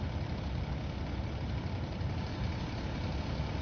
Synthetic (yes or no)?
no